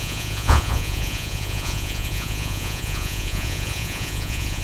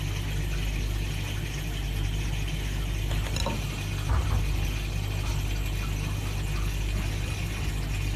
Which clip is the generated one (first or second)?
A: first